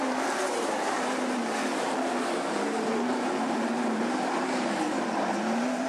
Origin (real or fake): fake